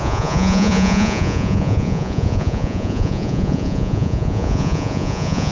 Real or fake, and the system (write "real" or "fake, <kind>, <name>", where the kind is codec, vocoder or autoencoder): fake, vocoder, Vocos